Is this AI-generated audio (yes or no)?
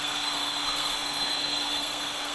yes